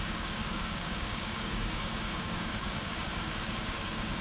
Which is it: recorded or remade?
remade